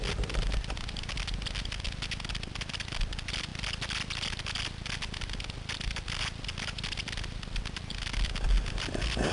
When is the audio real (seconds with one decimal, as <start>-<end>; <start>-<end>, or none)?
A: 0.0-9.3